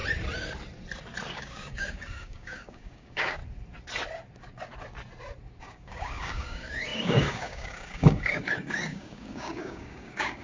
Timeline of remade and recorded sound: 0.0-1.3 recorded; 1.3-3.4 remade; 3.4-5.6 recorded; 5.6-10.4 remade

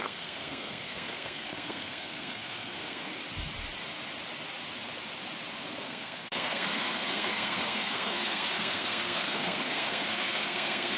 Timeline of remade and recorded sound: 0.0-3.1 remade; 3.1-5.8 recorded; 5.8-11.0 remade

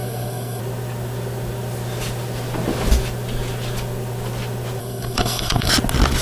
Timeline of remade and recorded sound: 0.0-0.6 remade; 0.6-4.8 recorded; 4.8-5.7 remade; 5.7-6.2 recorded

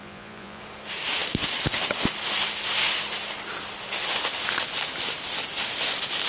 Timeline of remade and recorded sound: 0.0-0.6 remade; 0.6-6.3 recorded

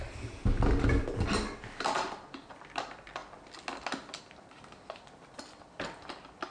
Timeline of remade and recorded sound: 0.0-6.5 recorded

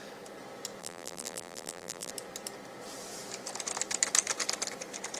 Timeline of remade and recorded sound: 0.0-0.8 recorded; 0.8-2.1 remade; 2.1-5.2 recorded

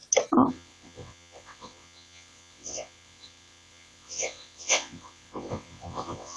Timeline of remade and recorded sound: 0.0-0.5 recorded; 0.5-6.4 remade

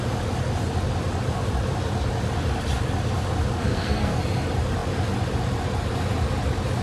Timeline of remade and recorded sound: 0.0-3.6 recorded; 3.6-4.2 remade; 4.2-6.8 recorded